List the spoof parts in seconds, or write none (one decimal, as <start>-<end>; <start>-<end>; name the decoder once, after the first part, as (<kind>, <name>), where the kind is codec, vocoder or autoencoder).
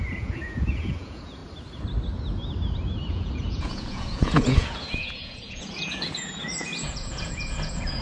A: 0.0-1.4 (vocoder, Vocos); 3.1-8.0